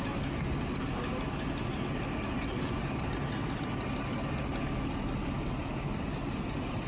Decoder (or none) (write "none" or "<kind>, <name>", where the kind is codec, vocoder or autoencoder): none